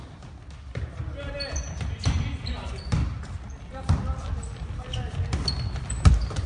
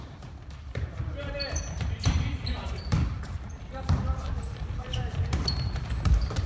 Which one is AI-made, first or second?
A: second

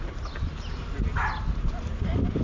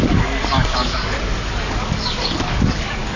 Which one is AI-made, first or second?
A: second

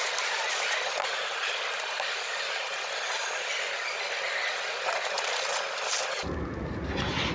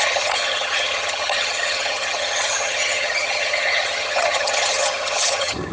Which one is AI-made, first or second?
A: second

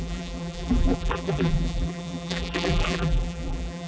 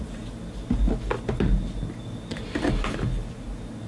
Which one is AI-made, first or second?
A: first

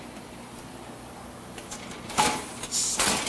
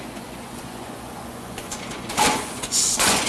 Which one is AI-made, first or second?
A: second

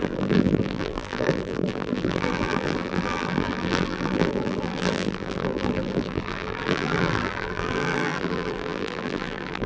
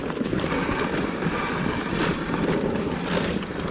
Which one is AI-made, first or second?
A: first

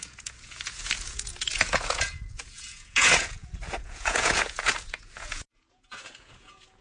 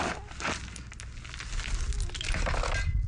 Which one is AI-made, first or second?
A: first